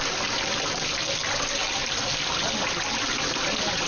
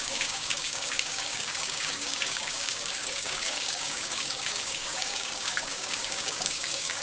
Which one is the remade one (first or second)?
second